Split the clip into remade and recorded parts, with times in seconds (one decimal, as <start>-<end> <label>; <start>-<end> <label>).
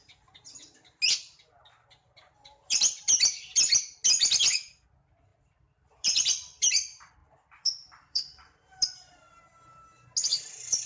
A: 0.0-2.0 recorded; 2.0-2.8 remade; 2.8-5.3 recorded; 5.3-6.7 remade; 6.7-7.2 recorded; 7.2-9.4 remade; 9.4-10.9 recorded